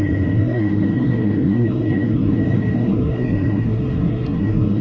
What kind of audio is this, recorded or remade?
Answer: remade